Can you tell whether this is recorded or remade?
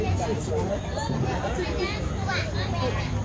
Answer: recorded